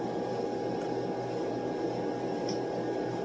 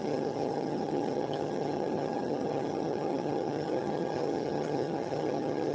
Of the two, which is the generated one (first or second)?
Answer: second